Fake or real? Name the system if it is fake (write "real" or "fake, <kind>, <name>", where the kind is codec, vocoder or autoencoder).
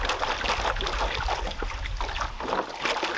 real